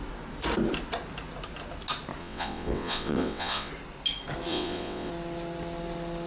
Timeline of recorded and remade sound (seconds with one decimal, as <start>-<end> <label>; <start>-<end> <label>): 0.0-2.2 recorded; 2.2-3.7 remade; 3.7-4.5 recorded; 4.5-5.1 remade; 5.1-6.3 recorded